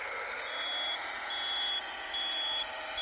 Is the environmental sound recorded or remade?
recorded